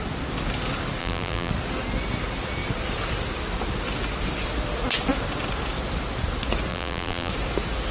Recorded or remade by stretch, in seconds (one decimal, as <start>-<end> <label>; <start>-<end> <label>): 0.0-1.0 recorded; 1.0-1.5 remade; 1.5-6.7 recorded; 6.7-7.3 remade; 7.3-7.9 recorded